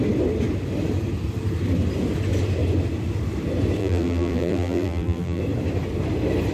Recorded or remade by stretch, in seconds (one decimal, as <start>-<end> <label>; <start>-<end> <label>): 0.0-3.8 recorded; 3.8-5.4 remade; 5.4-6.5 recorded

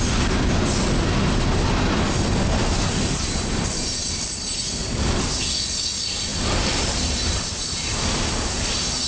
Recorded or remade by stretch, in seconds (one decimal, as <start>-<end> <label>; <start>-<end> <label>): 0.0-6.3 recorded; 6.3-8.0 remade; 8.0-9.1 recorded

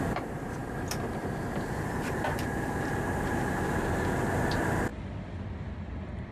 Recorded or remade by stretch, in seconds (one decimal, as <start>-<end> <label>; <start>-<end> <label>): 0.0-6.3 recorded